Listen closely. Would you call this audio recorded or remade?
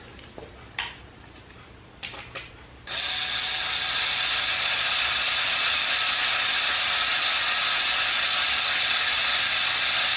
recorded